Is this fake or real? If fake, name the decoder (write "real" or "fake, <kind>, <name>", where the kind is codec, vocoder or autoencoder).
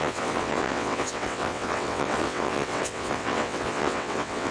fake, vocoder, WaveNeXt